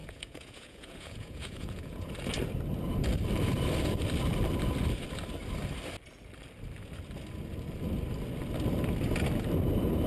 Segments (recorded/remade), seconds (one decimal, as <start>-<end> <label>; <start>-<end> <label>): 0.0-2.1 remade; 2.1-10.1 recorded